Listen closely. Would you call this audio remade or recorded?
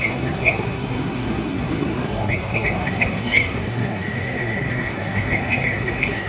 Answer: remade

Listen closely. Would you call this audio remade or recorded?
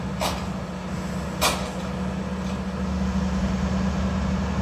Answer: recorded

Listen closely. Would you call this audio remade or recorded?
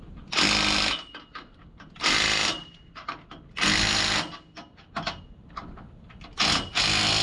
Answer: recorded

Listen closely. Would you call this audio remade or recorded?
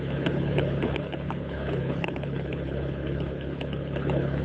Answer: remade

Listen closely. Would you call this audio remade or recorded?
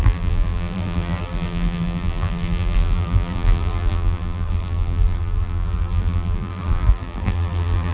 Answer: remade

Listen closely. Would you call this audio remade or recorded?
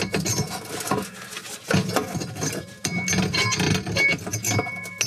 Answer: recorded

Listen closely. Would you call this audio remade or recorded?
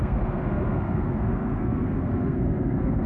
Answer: remade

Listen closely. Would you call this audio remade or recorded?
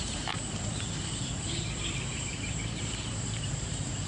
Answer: remade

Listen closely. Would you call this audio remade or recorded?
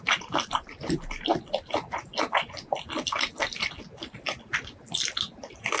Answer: recorded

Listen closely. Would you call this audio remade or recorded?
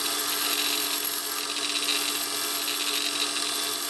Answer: recorded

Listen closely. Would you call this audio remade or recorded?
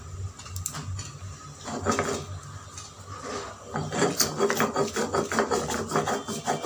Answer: recorded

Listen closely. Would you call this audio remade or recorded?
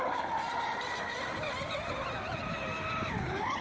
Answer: recorded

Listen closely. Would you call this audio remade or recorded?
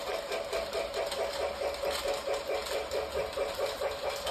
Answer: recorded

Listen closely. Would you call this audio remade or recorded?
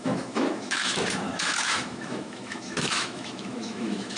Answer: remade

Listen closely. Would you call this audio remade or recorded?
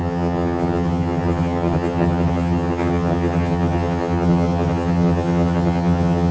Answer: remade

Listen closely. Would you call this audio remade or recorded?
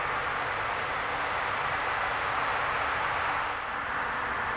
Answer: recorded